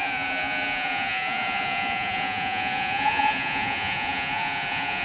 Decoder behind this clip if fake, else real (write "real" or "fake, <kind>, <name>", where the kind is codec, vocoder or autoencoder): fake, vocoder, Vocos